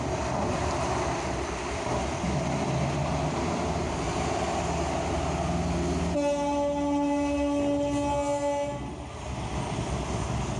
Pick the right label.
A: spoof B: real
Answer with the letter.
B